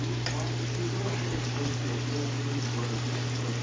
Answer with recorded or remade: recorded